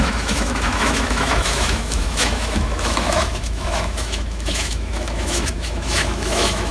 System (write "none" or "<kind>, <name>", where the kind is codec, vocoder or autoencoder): autoencoder, DAC-VAE